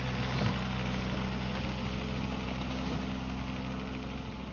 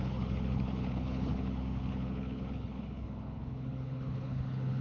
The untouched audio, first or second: first